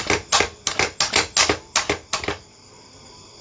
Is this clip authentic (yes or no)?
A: yes